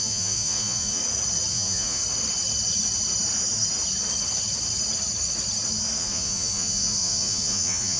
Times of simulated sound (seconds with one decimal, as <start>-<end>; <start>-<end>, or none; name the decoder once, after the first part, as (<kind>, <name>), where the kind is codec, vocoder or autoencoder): 0.0-1.0 (vocoder, Vocos); 1.5-2.0; 6.0-8.0